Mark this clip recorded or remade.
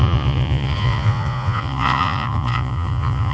remade